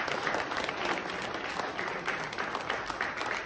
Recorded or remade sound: recorded